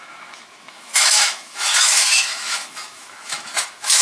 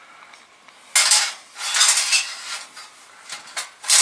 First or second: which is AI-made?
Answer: first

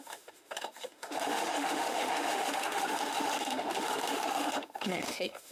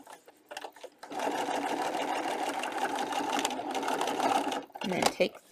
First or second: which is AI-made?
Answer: first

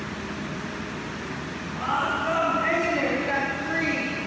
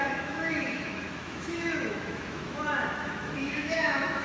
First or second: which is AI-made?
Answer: second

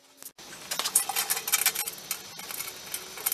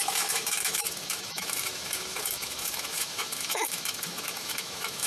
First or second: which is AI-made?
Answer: second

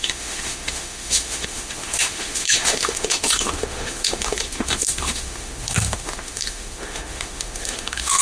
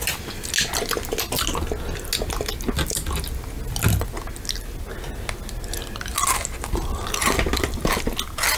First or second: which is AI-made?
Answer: first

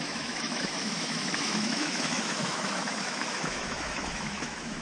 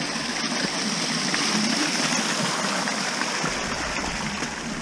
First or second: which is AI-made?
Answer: first